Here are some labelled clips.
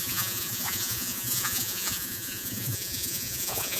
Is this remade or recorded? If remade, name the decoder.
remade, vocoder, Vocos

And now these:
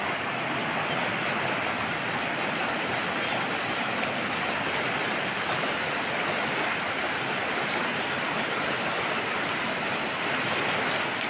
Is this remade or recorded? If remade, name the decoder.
recorded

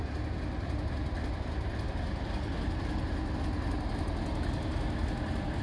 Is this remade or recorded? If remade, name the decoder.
recorded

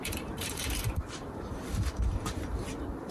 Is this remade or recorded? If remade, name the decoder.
remade, vocoder, BigVGAN v2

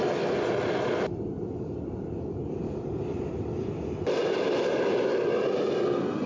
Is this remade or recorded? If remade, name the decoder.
recorded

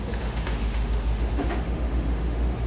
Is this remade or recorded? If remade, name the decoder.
remade, autoencoder, DAC-VAE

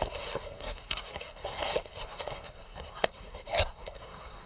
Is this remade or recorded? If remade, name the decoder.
remade, codec, SNAC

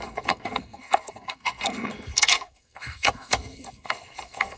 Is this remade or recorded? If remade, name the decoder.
remade, codec, SNAC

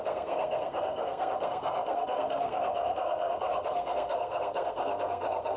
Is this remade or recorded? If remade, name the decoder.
remade, codec, SNAC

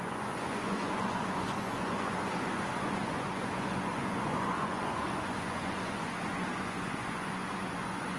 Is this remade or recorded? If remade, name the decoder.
remade, vocoder, Vocos